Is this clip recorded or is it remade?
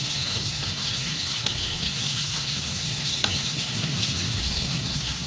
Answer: remade